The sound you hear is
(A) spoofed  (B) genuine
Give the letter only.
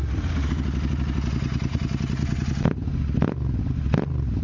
B